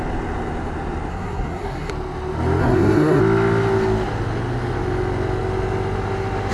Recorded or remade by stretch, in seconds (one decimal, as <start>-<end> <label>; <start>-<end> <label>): 0.0-1.1 recorded; 1.1-1.9 remade; 1.9-2.6 recorded; 2.6-3.2 remade; 3.2-6.5 recorded